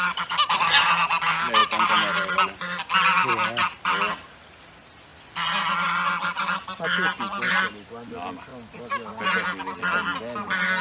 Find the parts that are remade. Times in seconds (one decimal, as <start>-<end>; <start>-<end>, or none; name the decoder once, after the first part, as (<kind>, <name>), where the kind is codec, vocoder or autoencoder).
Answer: none